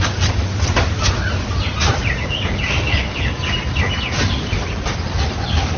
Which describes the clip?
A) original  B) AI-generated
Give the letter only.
A